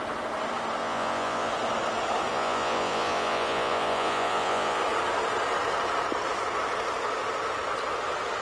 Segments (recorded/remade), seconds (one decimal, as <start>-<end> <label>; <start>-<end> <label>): 0.0-0.8 recorded; 0.8-1.5 remade; 1.5-2.3 recorded; 2.3-4.8 remade; 4.8-8.4 recorded